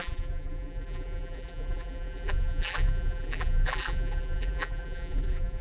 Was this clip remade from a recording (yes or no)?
yes